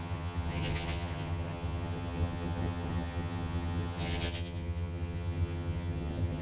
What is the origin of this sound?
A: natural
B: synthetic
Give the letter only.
B